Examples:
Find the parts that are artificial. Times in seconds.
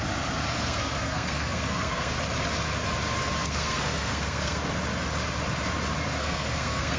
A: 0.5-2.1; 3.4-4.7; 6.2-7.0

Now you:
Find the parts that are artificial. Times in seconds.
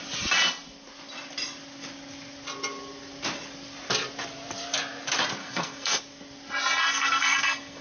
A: 5.4-6.0; 6.8-7.8